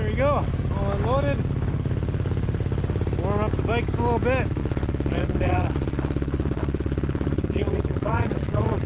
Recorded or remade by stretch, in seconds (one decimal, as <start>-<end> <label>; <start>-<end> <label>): 0.0-4.6 recorded; 4.6-8.9 remade